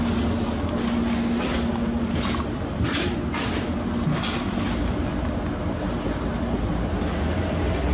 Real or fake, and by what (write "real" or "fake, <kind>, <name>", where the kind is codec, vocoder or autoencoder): real